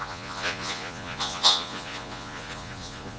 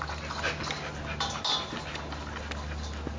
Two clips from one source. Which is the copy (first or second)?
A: first